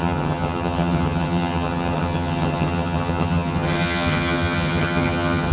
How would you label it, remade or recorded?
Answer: remade